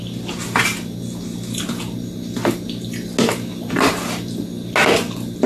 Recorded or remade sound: recorded